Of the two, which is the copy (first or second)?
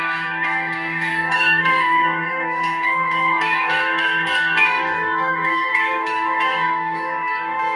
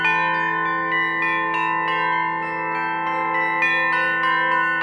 first